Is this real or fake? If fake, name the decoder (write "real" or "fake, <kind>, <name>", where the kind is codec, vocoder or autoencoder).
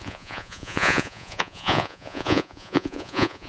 fake, vocoder, Vocos